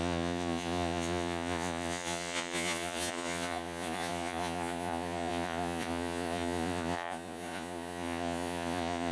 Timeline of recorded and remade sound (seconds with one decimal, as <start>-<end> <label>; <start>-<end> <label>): 0.0-9.1 remade